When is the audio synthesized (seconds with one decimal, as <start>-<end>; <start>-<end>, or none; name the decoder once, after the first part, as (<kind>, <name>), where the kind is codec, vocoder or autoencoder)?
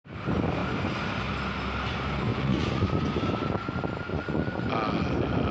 2.3-3.2 (vocoder, Vocos); 4.1-4.7